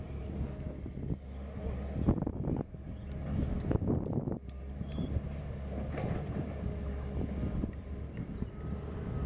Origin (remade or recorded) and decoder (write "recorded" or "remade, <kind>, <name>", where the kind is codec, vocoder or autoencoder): recorded